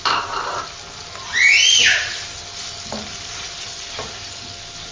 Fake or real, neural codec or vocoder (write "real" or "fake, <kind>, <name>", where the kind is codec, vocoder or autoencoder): real